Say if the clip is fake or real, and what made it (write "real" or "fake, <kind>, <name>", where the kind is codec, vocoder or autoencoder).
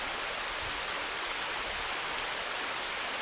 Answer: real